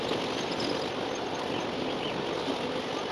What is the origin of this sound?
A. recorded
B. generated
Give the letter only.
A